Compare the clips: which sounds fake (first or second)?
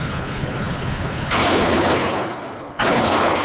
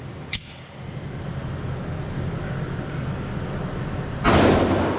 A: first